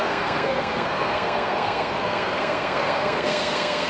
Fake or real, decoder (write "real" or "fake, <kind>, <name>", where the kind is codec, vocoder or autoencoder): fake, codec, SNAC